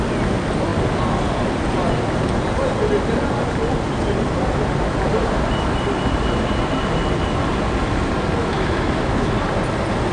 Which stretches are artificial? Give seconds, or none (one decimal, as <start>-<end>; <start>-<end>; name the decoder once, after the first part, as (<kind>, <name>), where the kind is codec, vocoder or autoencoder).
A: 8.4-9.3 (autoencoder, DAC-VAE)